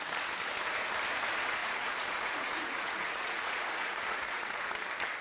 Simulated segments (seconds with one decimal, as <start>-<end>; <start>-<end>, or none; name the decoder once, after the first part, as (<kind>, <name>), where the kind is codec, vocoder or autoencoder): 1.6-4.7 (vocoder, Vocos)

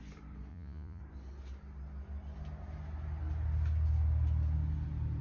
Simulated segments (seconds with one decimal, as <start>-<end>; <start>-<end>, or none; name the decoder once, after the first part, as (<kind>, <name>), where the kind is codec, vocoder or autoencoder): 0.5-1.0 (vocoder, Vocos)

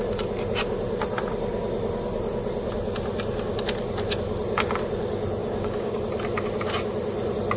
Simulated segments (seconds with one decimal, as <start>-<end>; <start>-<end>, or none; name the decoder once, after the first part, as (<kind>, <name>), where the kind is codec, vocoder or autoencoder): 5.4-6.0 (codec, DAC)

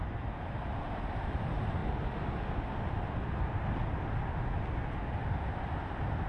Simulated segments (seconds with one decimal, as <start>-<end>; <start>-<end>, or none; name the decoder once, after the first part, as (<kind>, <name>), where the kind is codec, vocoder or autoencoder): 0.0-1.8 (vocoder, BigVGAN v2); 5.6-6.3